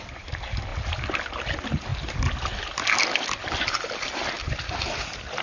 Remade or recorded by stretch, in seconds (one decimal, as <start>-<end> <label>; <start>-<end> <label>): 0.0-5.4 recorded